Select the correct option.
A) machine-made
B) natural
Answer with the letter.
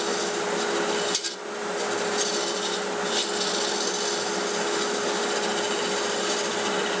B